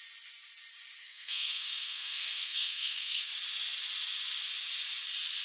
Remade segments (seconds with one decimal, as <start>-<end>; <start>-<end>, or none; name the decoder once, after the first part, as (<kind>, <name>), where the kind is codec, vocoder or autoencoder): 1.0-3.3 (codec, SNAC)